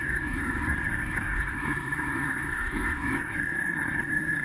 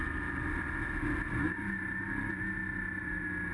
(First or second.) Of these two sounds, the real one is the second